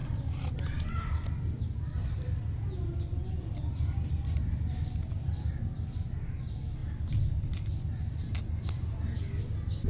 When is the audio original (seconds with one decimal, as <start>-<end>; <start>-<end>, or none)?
0.0-9.9